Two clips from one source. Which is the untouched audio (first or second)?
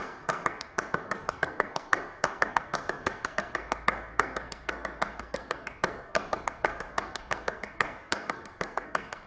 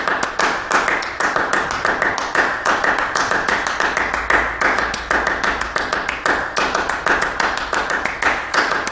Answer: second